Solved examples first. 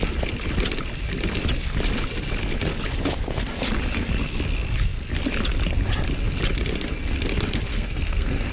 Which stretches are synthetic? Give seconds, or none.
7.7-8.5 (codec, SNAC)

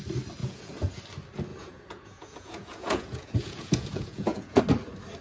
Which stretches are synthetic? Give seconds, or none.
0.4-1.0 (vocoder, Vocos); 1.5-4.6

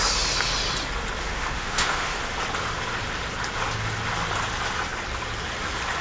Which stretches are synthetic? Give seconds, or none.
1.2-2.2 (autoencoder, DAC-VAE)

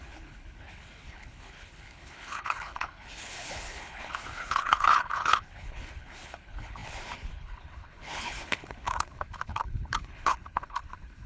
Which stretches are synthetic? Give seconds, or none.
0.0-11.3 (codec, HILCodec)

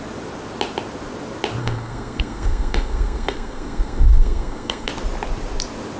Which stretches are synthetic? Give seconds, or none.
1.6-4.9 (codec, SNAC)

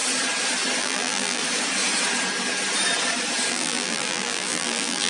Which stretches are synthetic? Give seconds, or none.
0.8-1.4 (vocoder, BigVGAN v2); 3.5-5.1

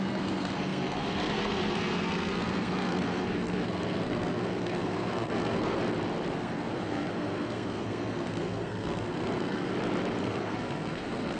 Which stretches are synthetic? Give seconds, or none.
0.0-5.8 (codec, SNAC); 6.3-9.7; 10.2-11.4